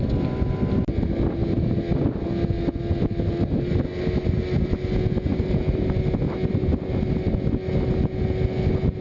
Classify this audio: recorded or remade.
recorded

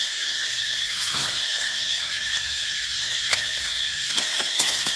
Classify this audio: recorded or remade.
remade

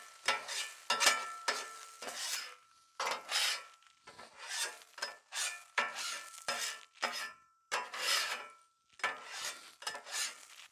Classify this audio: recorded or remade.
recorded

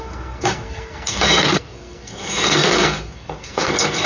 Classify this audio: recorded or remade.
remade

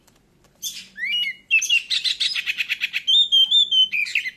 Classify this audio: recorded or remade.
recorded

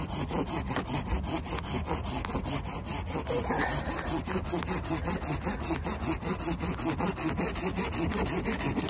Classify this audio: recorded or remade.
recorded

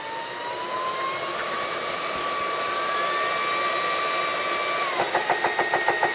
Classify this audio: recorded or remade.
recorded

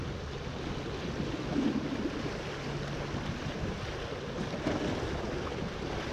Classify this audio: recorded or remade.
recorded